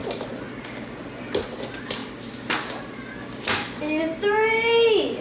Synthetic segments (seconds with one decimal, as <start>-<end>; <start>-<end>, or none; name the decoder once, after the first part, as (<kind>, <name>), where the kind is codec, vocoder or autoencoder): none

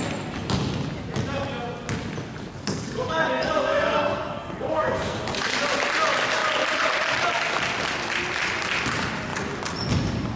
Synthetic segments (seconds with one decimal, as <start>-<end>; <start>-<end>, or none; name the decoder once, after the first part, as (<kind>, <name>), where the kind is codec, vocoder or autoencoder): 2.5-5.2 (codec, SNAC)

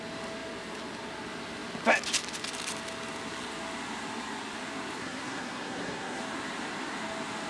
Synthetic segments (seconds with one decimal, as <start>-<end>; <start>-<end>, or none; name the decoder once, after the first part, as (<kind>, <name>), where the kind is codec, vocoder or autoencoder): 5.0-6.2 (codec, SNAC)